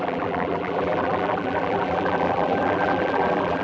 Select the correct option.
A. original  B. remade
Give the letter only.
B